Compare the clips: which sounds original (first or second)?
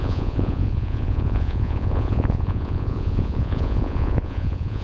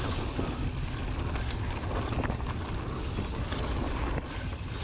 second